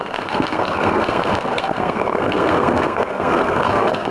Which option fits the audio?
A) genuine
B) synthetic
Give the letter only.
B